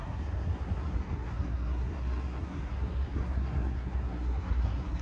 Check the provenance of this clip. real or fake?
fake